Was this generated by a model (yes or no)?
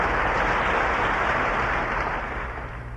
yes